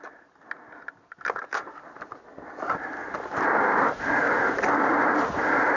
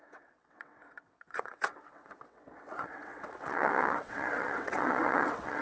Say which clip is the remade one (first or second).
second